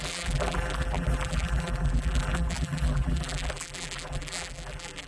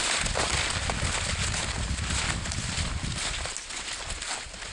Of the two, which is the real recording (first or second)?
second